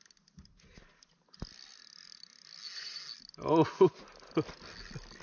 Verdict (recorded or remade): recorded